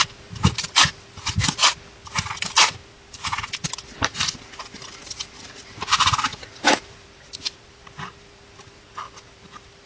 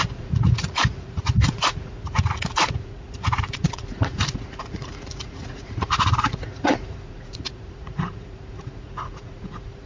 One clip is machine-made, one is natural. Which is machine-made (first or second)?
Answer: second